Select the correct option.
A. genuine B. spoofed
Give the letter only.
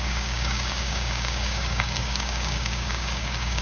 B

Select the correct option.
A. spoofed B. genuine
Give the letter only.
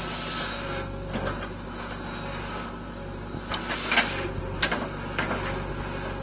B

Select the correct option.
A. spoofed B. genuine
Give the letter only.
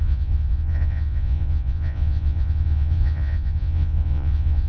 A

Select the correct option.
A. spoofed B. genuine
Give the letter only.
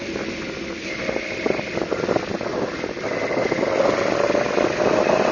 B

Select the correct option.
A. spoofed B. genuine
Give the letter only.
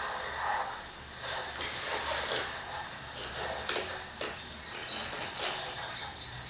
B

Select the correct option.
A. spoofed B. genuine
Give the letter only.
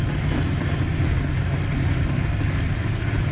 B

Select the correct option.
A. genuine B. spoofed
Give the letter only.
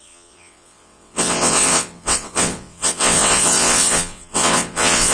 B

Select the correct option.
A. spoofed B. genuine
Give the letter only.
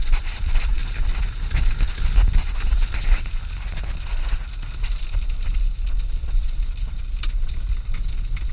B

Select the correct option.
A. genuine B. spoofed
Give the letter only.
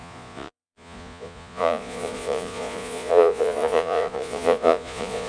B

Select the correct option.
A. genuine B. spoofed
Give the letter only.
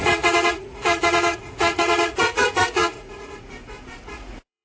B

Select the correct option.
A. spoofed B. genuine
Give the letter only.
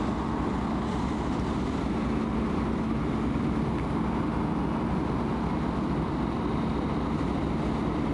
B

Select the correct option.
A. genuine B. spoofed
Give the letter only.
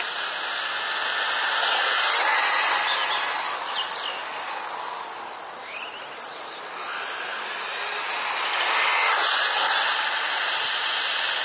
A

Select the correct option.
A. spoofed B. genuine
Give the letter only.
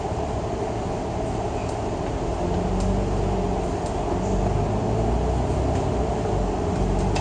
B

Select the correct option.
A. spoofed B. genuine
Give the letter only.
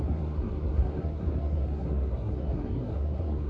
A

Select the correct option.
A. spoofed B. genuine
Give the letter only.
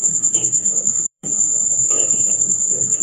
A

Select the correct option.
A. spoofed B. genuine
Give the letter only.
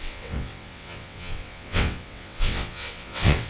A